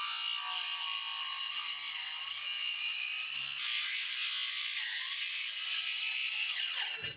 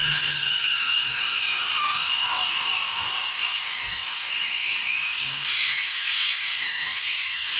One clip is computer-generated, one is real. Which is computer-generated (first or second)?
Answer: second